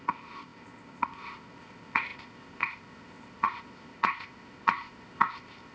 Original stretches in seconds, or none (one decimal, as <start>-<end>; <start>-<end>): none